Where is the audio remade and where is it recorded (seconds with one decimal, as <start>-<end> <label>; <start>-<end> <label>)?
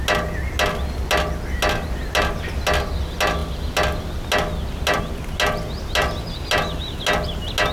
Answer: 0.0-7.7 recorded